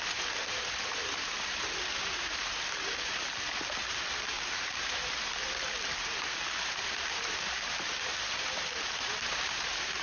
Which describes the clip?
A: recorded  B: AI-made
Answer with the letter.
B